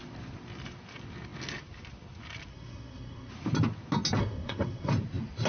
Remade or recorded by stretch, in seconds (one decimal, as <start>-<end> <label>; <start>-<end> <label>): 0.0-2.5 recorded; 2.5-3.3 remade; 3.3-4.2 recorded; 4.2-4.9 remade; 4.9-5.5 recorded